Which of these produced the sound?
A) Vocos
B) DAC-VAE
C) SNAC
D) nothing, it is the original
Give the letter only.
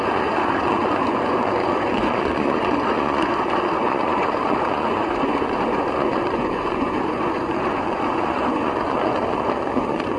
A